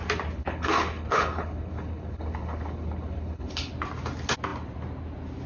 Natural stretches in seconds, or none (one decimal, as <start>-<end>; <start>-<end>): 0.0-0.4; 3.7-5.5